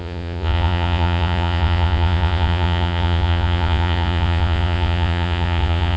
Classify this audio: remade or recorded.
remade